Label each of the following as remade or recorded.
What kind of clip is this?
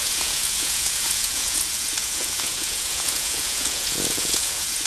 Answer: remade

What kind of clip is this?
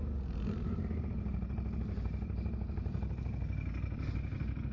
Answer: recorded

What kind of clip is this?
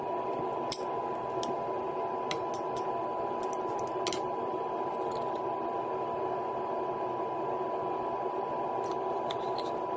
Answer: recorded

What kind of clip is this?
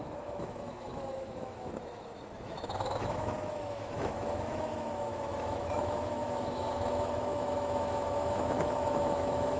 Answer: remade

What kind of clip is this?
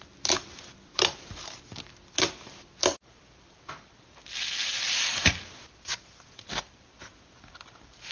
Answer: recorded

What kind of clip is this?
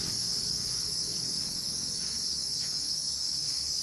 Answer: remade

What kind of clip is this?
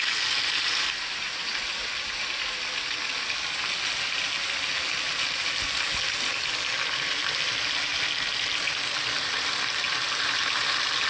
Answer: recorded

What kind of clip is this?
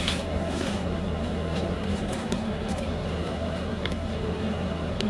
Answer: remade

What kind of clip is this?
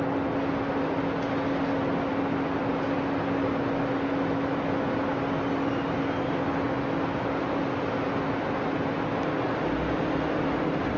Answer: recorded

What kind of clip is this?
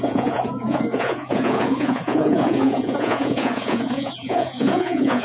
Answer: remade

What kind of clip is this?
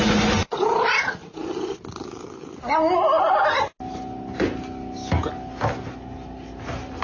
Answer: recorded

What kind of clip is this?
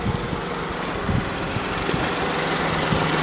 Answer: recorded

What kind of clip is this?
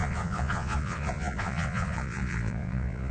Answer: remade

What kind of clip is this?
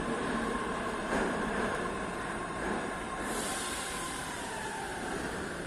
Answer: remade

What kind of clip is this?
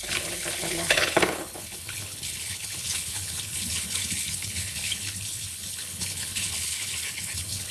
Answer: remade